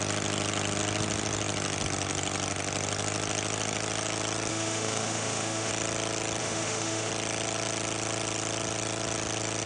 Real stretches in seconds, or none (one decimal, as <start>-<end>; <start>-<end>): 0.0-4.5; 5.7-6.4; 7.1-9.7